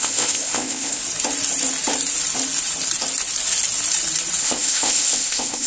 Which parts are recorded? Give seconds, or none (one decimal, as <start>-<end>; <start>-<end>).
1.0-4.4